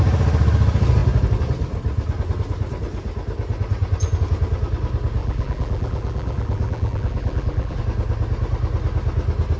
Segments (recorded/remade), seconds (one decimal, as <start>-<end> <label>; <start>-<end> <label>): 0.0-5.2 recorded; 5.2-7.8 remade; 7.8-9.6 recorded